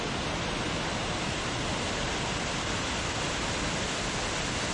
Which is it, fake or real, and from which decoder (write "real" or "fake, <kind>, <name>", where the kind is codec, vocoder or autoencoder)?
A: real